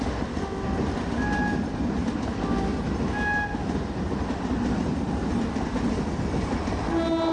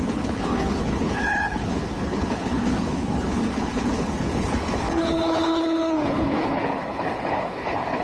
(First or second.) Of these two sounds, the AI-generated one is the second